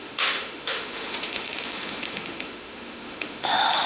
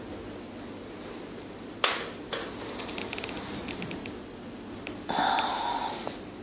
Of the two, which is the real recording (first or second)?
second